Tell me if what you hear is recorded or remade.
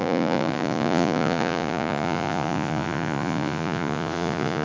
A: remade